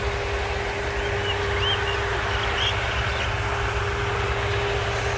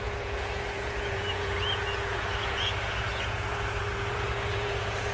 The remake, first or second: second